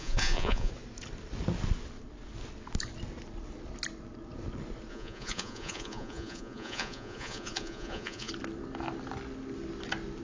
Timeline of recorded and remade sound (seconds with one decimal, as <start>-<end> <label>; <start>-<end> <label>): 0.0-0.7 remade; 0.7-4.9 recorded; 4.9-8.3 remade; 8.3-10.2 recorded